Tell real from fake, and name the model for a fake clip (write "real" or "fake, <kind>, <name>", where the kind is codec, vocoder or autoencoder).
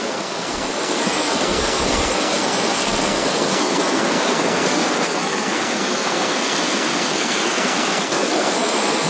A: fake, codec, SNAC